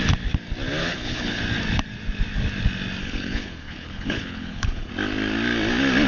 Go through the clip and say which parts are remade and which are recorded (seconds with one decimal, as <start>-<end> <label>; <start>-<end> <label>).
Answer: 0.0-0.8 recorded; 0.8-1.4 remade; 1.4-3.0 recorded; 3.0-4.9 remade; 4.9-6.1 recorded